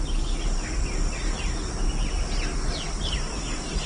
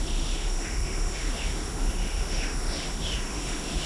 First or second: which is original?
first